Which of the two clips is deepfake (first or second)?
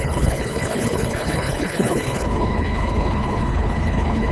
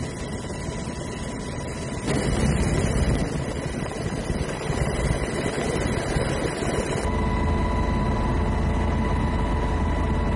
first